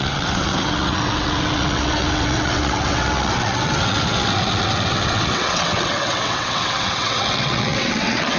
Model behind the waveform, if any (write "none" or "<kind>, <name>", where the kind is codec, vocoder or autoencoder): vocoder, WaveNeXt